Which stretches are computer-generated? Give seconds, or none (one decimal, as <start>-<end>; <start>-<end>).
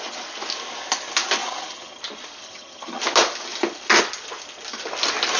1.4-2.0; 2.4-3.0